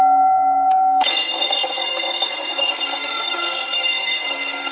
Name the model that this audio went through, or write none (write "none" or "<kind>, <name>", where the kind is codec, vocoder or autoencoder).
codec, SNAC